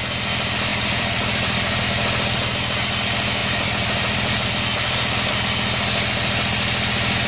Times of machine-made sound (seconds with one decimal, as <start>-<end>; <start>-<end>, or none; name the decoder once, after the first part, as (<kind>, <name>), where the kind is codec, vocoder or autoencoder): 0.7-1.8 (vocoder, BigVGAN v2); 3.4-5.3